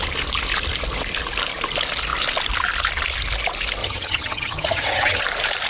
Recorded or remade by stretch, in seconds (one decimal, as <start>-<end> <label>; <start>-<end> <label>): 0.0-3.8 recorded; 3.8-5.2 remade; 5.2-5.7 recorded